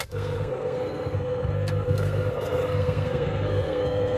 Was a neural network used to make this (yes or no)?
yes